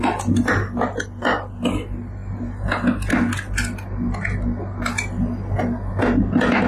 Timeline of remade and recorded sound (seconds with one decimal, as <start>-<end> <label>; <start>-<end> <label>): 0.0-6.7 recorded